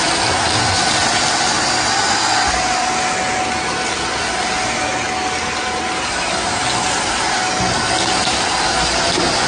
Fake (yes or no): no